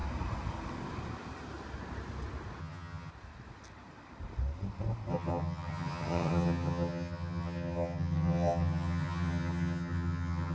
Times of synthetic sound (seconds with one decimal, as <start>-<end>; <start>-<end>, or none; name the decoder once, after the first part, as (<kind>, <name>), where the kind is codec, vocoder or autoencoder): 2.6-3.1 (vocoder, HiFi-GAN); 5.1-10.5